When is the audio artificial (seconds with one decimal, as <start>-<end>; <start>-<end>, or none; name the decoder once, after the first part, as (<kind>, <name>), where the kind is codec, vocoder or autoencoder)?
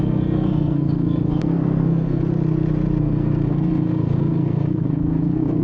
0.0-2.2 (codec, SNAC); 3.0-5.6